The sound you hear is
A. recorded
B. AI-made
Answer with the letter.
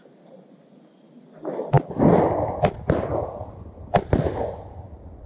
A